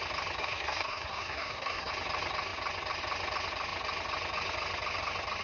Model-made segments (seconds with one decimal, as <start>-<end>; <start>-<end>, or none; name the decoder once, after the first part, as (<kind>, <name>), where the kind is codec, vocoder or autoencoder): 0.4-1.9 (codec, SNAC)